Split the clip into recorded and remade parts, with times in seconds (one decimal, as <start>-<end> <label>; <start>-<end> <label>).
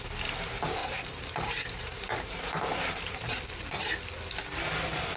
0.0-0.8 recorded; 0.8-3.9 remade; 3.9-5.2 recorded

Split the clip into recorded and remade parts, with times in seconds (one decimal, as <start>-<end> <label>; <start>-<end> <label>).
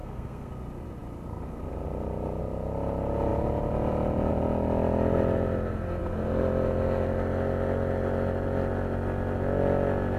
0.0-0.5 remade; 0.5-10.2 recorded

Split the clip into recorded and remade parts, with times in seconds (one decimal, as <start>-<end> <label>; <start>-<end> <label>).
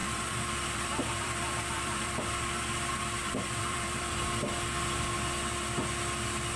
0.0-2.2 remade; 2.2-3.2 recorded; 3.2-4.1 remade; 4.1-6.6 recorded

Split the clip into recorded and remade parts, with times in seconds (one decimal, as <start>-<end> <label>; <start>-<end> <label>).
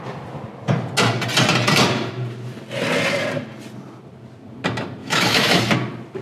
0.0-5.0 recorded; 5.0-5.6 remade; 5.6-6.2 recorded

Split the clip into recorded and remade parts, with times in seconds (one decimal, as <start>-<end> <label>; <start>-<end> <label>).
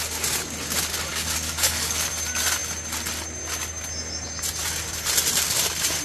0.0-1.1 recorded; 1.1-2.1 remade; 2.1-6.0 recorded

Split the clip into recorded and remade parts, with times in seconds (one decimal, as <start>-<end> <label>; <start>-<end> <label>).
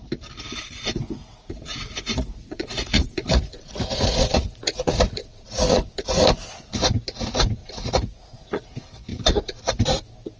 0.0-1.2 recorded; 1.2-6.1 remade; 6.1-7.6 recorded; 7.6-8.7 remade; 8.7-9.1 recorded; 9.1-9.7 remade; 9.7-10.4 recorded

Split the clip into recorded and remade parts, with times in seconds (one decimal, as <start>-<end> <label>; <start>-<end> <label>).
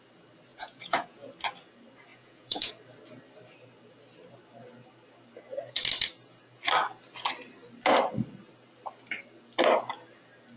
0.0-0.5 recorded; 0.5-1.3 remade; 1.3-2.1 recorded; 2.1-2.7 remade; 2.7-10.6 recorded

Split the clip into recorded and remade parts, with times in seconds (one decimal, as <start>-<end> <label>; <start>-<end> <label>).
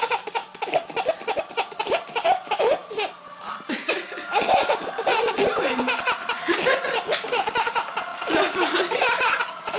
0.0-9.8 recorded